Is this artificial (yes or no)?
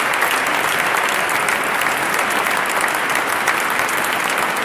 no